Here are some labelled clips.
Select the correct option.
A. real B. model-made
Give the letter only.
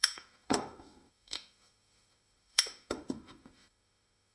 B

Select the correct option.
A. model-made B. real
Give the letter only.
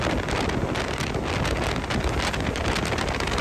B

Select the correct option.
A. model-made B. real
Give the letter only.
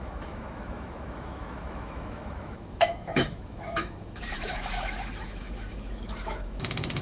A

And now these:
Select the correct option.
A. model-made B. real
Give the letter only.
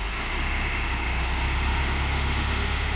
A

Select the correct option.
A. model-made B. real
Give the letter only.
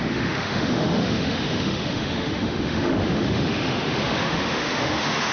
A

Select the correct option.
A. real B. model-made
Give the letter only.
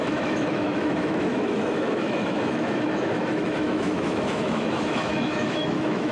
B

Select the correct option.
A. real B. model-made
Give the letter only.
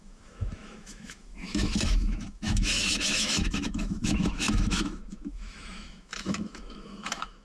B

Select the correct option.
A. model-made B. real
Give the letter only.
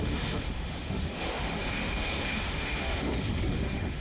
A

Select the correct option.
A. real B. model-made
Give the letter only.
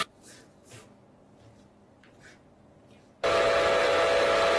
A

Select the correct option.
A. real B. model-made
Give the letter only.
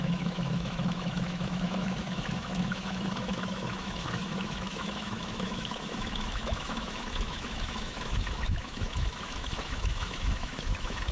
B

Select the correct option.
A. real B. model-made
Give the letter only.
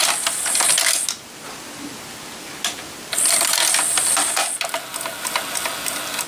A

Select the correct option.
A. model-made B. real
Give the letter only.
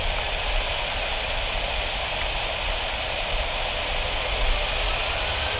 B